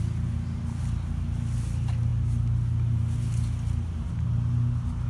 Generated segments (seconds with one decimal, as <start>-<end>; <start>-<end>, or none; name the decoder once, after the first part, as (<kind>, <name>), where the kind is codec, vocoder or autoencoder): none